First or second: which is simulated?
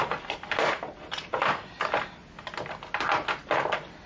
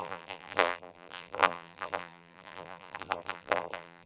second